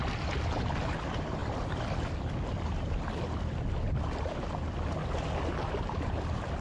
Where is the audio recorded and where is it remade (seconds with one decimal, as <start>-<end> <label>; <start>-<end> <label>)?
0.0-6.6 recorded